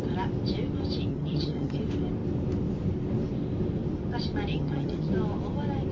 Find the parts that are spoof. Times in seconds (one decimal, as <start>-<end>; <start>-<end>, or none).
1.1-1.8; 4.5-5.1